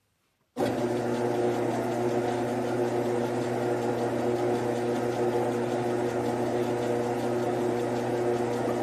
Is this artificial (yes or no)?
no